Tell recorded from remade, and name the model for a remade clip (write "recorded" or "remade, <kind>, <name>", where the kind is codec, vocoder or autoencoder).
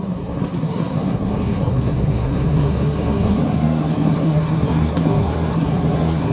remade, codec, SNAC